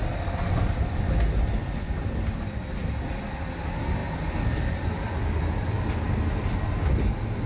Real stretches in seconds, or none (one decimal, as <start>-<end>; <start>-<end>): 0.0-7.5